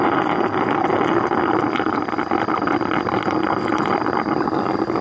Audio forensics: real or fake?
real